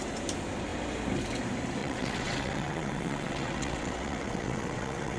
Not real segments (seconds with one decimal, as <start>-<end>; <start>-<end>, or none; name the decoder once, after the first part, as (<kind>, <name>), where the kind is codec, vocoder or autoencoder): 1.8-5.2 (vocoder, WaveNeXt)